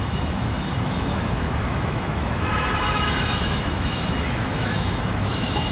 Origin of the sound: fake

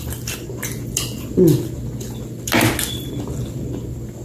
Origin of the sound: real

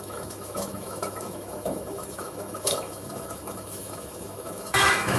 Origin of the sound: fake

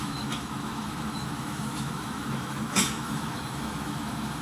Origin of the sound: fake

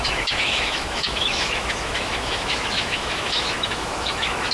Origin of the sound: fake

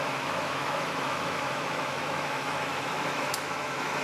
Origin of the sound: fake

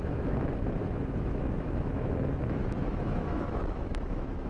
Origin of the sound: fake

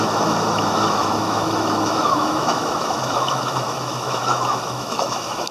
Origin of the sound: fake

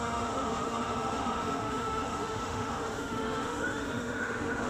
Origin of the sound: fake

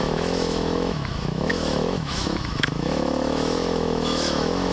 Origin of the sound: fake